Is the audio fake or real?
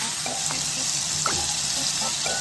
real